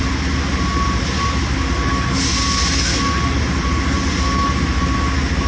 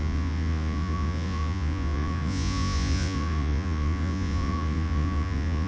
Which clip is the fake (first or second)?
second